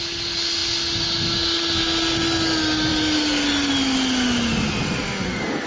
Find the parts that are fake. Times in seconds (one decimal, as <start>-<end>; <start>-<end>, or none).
none